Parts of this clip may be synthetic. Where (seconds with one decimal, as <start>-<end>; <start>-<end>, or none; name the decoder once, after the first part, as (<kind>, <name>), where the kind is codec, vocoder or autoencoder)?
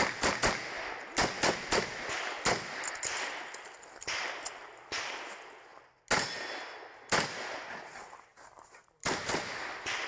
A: 8.3-9.4 (vocoder, BigVGAN v2)